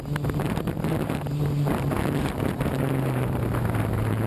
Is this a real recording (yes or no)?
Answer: no